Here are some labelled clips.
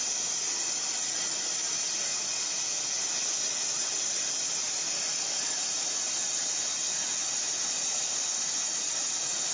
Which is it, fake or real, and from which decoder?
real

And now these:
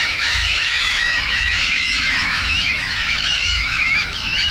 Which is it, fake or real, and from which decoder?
fake, autoencoder, DAC-VAE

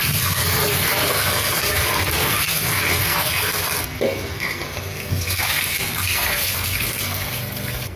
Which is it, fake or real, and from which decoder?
fake, codec, SNAC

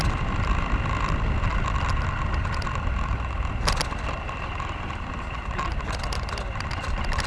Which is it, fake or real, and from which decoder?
real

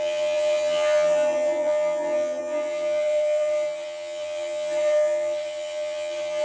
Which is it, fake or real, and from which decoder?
fake, vocoder, HiFi-GAN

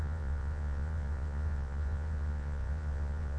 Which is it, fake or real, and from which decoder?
fake, vocoder, Vocos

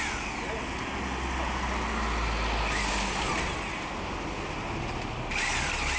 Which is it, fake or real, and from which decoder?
real